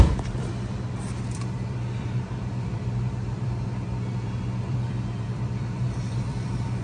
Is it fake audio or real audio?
fake